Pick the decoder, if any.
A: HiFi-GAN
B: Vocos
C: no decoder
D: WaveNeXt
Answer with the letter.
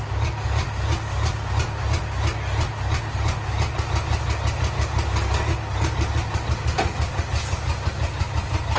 C